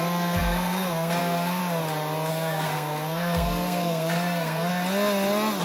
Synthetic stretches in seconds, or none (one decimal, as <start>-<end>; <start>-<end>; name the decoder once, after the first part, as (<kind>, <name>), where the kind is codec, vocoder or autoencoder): 0.0-1.6 (codec, SNAC); 2.3-4.7